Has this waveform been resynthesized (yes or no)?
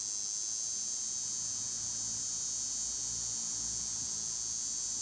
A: no